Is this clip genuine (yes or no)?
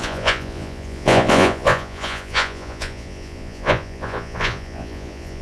no